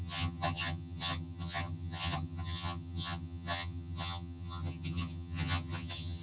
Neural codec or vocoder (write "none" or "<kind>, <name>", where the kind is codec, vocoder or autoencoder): vocoder, HiFi-GAN